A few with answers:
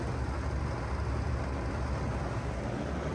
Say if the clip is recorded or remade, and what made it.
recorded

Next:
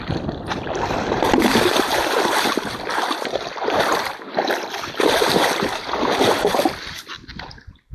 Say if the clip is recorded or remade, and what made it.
remade, vocoder, BigVGAN v2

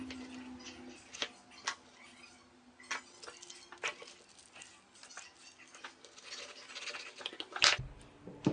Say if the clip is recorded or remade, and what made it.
recorded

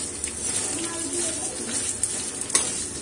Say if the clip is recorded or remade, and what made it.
recorded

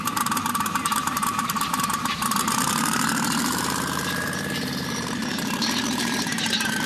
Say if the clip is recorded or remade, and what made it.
remade, vocoder, BigVGAN v2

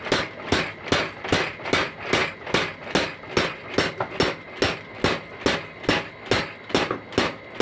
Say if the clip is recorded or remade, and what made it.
recorded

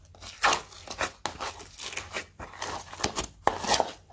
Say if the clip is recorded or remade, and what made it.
recorded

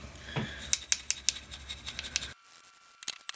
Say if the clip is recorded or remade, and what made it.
recorded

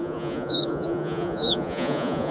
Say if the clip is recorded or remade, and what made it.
remade, vocoder, Vocos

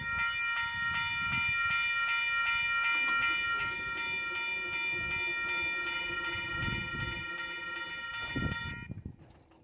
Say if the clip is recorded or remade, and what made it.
recorded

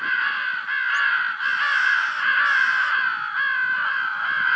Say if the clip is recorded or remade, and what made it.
recorded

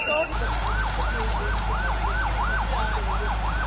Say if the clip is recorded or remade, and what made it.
recorded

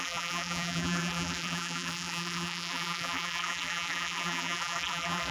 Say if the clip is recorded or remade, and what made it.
remade, vocoder, BigVGAN v2